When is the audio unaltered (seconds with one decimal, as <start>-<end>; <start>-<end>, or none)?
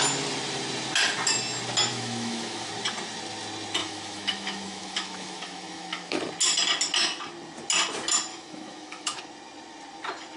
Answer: 0.0-1.9; 2.7-3.8; 6.2-8.3; 9.2-10.4